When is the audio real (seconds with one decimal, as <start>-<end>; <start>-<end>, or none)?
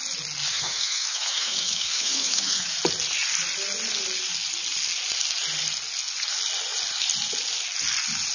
0.0-0.5; 2.8-8.3